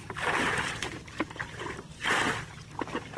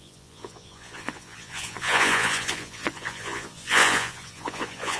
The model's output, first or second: second